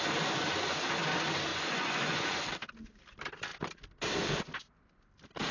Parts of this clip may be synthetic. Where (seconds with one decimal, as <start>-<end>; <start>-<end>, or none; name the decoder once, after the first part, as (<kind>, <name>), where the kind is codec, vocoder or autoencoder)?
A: 1.5-2.4 (vocoder, Vocos)